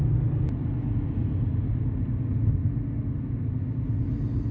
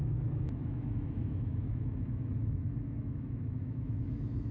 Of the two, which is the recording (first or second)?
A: first